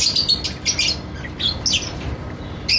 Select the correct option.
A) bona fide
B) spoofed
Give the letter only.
A